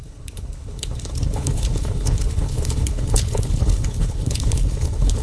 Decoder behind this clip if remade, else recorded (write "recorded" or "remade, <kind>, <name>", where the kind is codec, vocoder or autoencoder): remade, codec, HILCodec